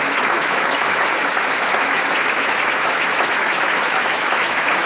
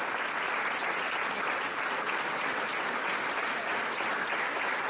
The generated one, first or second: first